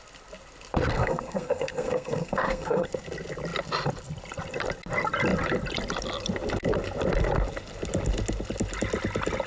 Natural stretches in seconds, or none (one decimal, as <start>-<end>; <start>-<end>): 0.0-0.9; 2.9-9.5